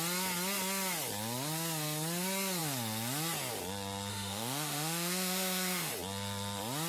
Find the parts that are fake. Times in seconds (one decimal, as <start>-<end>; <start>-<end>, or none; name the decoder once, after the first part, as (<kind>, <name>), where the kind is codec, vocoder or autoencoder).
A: 4.1-5.9 (autoencoder, DAC-VAE)